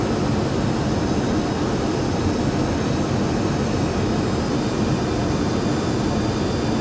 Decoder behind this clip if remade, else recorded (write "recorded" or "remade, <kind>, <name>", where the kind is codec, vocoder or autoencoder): recorded